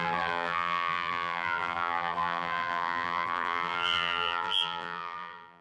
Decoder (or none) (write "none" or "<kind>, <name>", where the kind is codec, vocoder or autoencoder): vocoder, BigVGAN v2